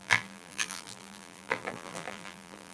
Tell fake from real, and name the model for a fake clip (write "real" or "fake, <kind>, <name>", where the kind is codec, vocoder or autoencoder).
fake, vocoder, BigVGAN v2